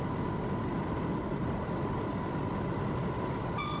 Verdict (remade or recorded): recorded